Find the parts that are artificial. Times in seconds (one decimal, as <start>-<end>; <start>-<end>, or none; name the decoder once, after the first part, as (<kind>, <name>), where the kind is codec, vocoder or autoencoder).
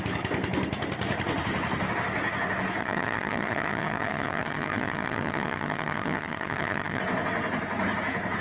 2.8-7.0 (vocoder, HiFi-GAN)